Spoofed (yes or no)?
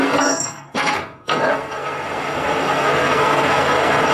yes